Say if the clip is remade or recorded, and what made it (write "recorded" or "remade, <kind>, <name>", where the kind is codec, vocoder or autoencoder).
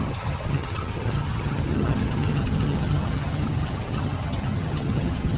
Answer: remade, vocoder, HiFi-GAN